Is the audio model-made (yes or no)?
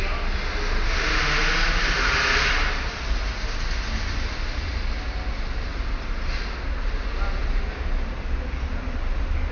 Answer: no